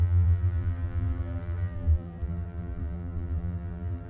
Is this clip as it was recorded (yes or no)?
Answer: no